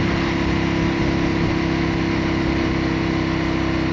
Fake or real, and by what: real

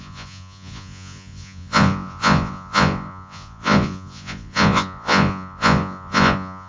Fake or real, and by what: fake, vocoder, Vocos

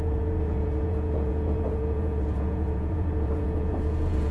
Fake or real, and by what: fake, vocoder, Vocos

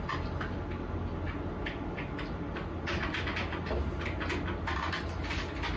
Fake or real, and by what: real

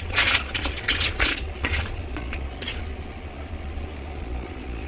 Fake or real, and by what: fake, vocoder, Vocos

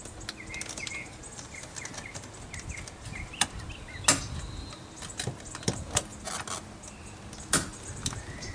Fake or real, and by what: real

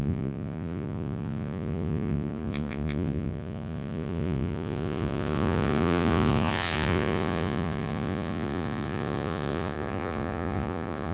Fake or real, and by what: fake, vocoder, Vocos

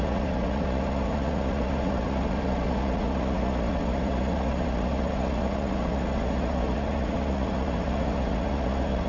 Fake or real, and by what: fake, vocoder, Vocos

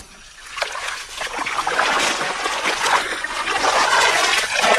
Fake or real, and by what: fake, vocoder, Vocos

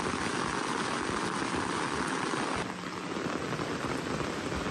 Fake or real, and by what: real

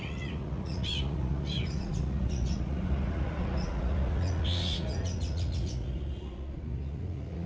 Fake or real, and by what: fake, vocoder, Vocos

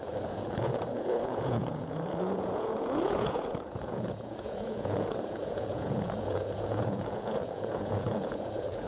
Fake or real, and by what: fake, vocoder, Vocos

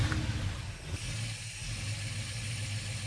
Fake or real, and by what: real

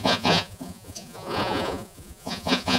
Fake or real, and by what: fake, vocoder, Vocos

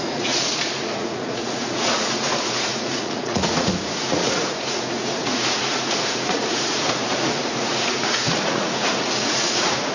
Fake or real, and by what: fake, vocoder, Vocos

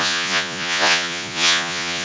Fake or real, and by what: fake, vocoder, Vocos